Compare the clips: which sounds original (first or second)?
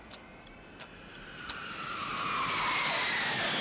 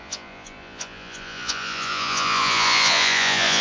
first